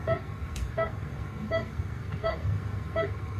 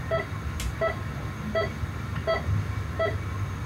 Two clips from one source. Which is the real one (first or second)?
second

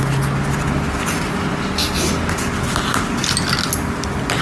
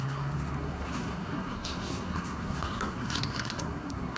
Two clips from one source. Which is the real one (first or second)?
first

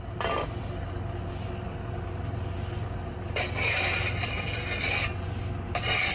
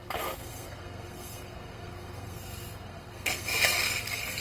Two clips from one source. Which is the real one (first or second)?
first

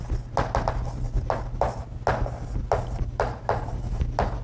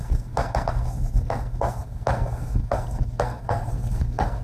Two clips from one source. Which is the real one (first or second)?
first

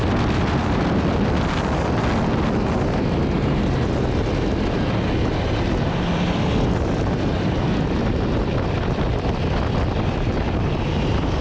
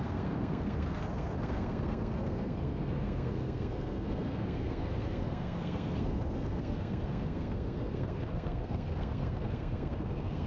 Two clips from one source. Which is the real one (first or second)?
first